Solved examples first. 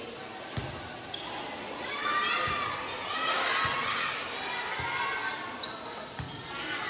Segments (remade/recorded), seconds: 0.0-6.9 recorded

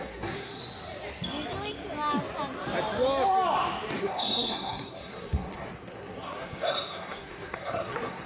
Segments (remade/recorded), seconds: 0.0-0.6 remade; 0.6-4.0 recorded; 4.0-8.3 remade